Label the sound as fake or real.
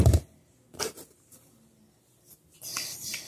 real